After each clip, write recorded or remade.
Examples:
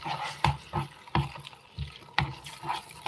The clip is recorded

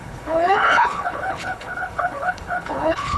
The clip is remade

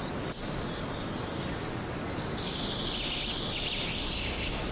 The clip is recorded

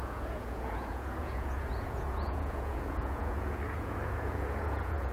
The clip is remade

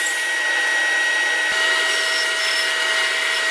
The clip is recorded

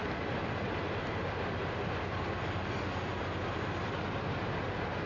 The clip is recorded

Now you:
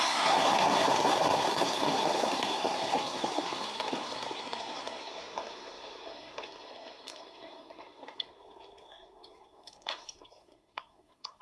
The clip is remade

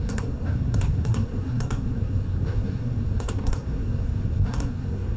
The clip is remade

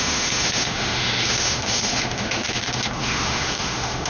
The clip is remade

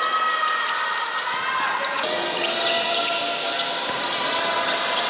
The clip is recorded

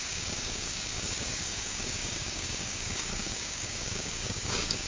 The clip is remade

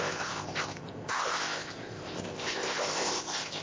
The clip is remade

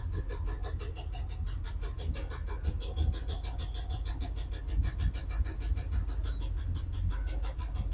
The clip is recorded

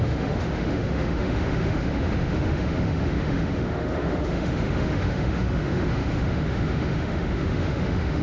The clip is remade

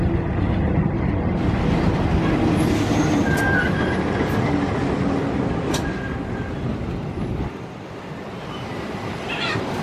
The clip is recorded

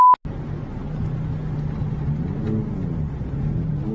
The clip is recorded